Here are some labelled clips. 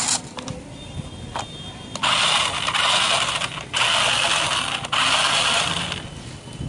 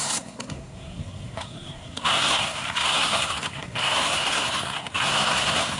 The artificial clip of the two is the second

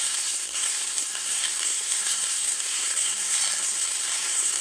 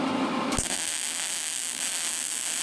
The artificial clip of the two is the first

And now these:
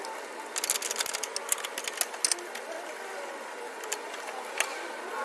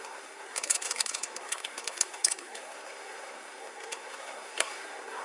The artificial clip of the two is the second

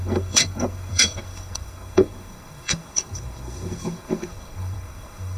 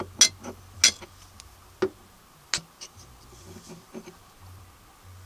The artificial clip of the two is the first